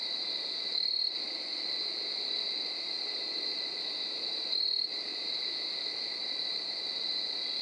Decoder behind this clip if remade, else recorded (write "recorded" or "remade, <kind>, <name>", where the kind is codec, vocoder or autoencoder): remade, vocoder, BigVGAN v2